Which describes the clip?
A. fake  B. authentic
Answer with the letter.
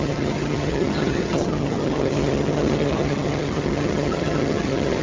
A